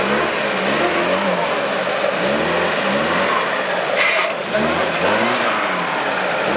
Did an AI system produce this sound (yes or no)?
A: no